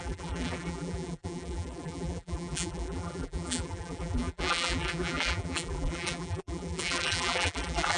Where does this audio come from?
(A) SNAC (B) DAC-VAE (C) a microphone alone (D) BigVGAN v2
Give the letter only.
D